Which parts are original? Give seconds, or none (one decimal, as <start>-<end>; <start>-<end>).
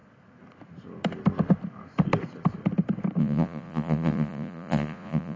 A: 0.0-3.2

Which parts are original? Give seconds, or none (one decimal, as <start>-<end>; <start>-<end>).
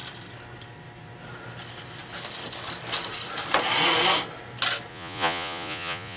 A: 0.0-4.9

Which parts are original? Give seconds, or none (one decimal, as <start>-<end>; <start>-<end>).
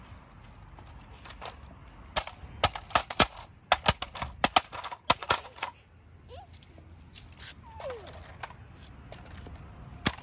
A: 0.0-3.0; 3.5-5.2; 5.8-10.2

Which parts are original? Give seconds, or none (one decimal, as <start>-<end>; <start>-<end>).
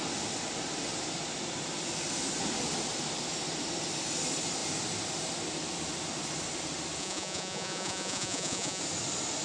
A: 0.0-7.0; 8.8-9.4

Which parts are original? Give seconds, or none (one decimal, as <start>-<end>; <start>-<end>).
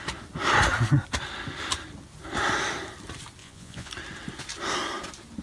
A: 0.0-3.4; 3.9-5.4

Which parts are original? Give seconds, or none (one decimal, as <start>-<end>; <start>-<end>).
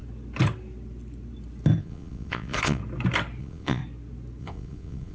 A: 0.0-1.8; 2.8-3.4; 3.8-4.4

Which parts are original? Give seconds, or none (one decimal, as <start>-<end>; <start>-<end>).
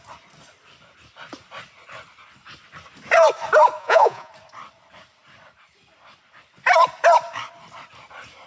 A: 0.0-3.8; 4.3-8.5